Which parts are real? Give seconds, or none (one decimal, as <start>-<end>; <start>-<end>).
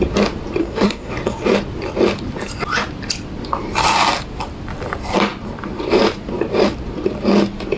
0.0-0.6; 1.1-7.8